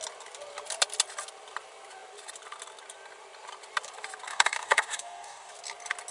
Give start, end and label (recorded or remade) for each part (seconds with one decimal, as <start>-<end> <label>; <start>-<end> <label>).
0.0-4.3 recorded; 4.3-5.5 remade; 5.5-6.1 recorded